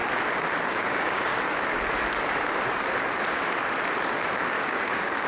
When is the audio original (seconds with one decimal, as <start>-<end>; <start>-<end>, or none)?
0.0-0.7; 1.3-4.5